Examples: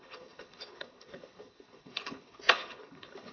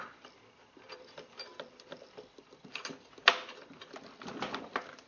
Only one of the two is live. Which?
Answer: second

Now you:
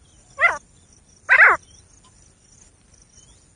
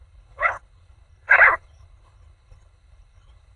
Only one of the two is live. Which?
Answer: first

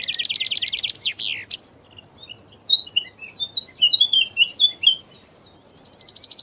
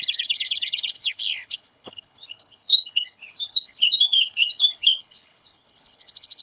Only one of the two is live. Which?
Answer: first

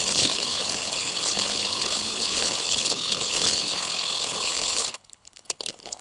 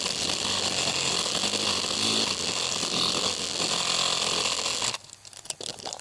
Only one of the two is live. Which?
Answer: second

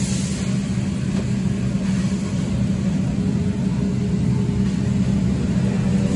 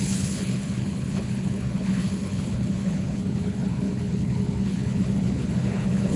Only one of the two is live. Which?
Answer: first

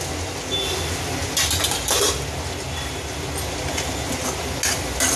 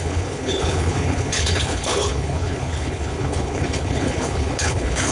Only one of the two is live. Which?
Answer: first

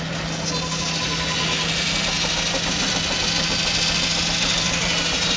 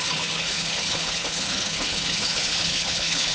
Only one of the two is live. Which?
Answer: first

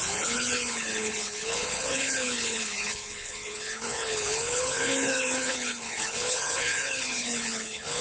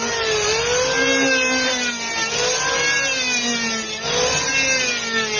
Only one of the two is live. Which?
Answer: second